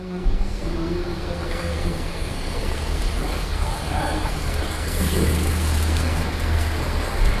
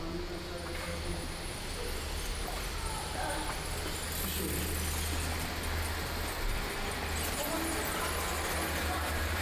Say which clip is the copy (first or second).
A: first